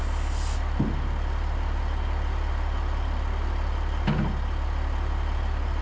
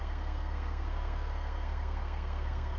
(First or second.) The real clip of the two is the first